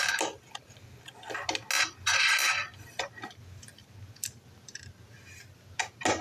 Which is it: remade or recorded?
recorded